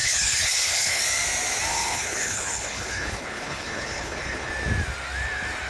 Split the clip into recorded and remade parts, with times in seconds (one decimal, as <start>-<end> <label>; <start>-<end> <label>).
0.0-1.0 remade; 1.0-1.7 recorded; 1.7-4.5 remade; 4.5-5.7 recorded